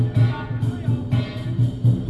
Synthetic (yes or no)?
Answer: no